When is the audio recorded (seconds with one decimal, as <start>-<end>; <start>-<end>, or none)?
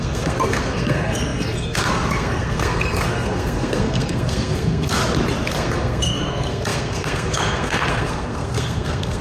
5.0-5.5